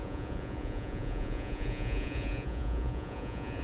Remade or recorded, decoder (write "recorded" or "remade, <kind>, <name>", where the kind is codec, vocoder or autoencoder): remade, vocoder, Vocos